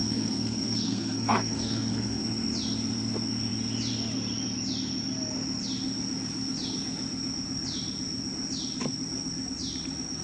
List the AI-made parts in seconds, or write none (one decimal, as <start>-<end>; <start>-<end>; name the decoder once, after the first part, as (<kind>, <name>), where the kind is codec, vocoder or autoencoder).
0.0-2.2 (codec, SNAC)